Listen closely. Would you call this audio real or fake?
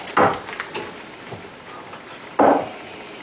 real